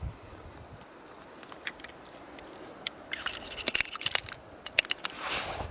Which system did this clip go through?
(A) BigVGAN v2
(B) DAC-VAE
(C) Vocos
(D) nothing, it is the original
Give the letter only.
D